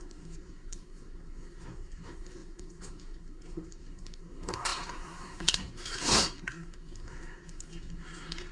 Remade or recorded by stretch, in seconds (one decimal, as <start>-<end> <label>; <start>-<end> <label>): 0.0-8.5 remade